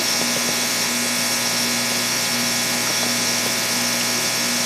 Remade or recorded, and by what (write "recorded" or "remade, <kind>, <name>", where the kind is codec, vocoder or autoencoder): recorded